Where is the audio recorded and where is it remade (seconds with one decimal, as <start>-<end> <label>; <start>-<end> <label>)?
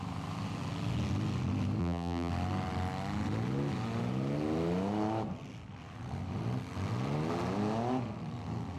0.0-1.8 recorded; 1.8-2.3 remade; 2.3-8.8 recorded